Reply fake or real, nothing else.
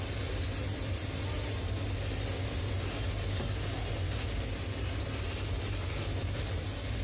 real